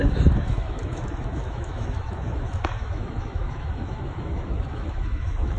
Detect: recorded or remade remade